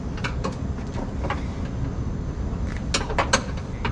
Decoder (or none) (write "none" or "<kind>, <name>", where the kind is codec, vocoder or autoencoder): none